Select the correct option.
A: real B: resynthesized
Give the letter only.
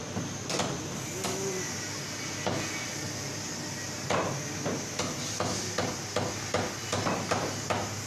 A